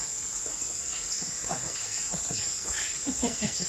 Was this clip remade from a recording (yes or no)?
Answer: yes